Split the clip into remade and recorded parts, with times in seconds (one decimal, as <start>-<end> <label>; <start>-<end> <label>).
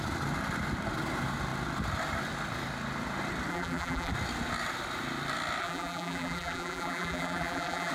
0.0-3.5 recorded; 3.5-4.1 remade; 4.1-5.6 recorded; 5.6-7.9 remade